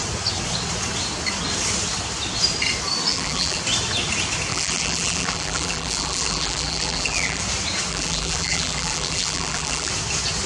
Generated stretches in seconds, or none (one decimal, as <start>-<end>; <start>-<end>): 3.1-3.6; 4.5-7.4; 7.9-9.9